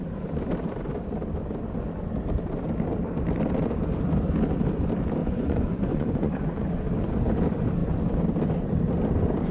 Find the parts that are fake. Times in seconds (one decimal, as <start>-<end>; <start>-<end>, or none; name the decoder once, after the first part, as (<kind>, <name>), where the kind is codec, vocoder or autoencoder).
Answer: 5.2-6.9 (vocoder, Vocos)